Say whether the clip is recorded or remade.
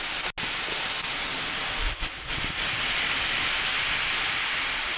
recorded